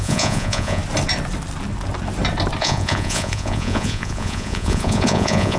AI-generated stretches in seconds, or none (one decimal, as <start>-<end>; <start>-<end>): 0.0-0.8; 2.6-5.6